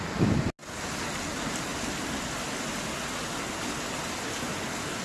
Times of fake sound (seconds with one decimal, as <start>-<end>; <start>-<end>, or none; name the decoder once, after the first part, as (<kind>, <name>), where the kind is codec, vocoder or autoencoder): none